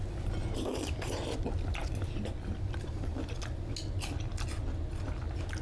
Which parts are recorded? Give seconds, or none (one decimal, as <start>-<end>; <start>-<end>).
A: 0.0-5.6